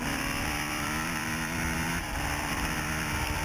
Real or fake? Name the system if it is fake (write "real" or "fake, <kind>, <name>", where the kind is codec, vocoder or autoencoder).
fake, vocoder, BigVGAN v2